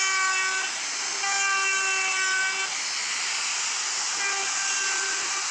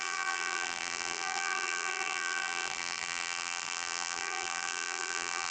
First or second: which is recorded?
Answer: first